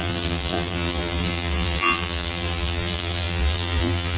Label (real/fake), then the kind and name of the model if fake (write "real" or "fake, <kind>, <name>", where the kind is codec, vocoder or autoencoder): fake, vocoder, BigVGAN v2